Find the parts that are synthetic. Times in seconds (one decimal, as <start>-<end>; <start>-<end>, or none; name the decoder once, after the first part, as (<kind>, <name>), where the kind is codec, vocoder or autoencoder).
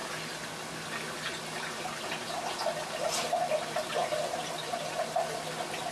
none